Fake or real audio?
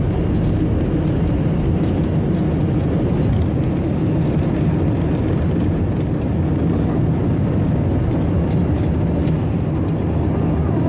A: real